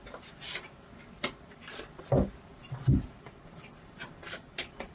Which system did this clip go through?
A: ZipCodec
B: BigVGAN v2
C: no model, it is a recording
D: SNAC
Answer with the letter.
C